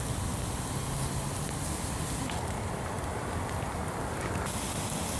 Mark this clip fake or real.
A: real